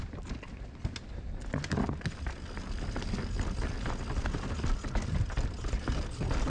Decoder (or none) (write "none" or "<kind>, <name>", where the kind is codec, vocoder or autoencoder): none